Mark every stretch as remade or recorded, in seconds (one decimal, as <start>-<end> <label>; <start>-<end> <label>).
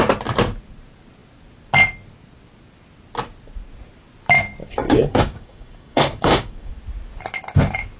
0.0-4.6 recorded; 4.6-6.7 remade; 6.7-8.0 recorded